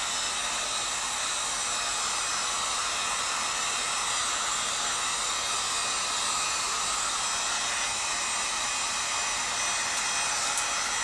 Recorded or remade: recorded